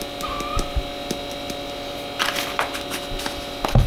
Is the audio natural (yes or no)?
yes